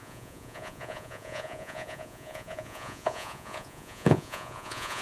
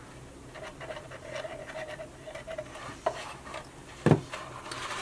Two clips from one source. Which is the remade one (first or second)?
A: first